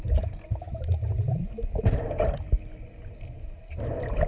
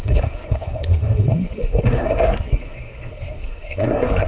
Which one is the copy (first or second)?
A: second